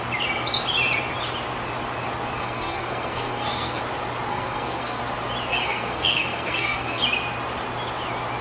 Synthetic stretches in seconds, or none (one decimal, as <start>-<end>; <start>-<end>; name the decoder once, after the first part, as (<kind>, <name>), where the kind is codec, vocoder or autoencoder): 2.4-3.8 (codec, SNAC); 4.3-5.0; 5.5-7.0